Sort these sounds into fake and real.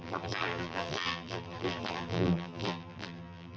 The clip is fake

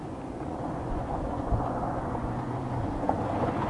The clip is fake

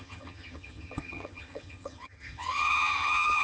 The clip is fake